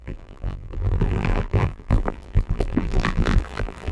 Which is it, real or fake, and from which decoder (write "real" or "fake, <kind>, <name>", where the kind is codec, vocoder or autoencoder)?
fake, vocoder, BigVGAN v2